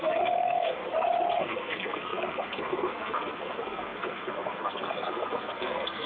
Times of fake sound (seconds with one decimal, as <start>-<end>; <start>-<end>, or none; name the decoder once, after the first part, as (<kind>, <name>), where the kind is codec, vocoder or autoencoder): 0.0-0.8 (codec, SNAC); 1.4-6.1